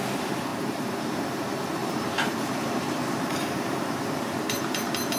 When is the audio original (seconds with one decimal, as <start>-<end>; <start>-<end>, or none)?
0.0-0.5; 1.0-1.8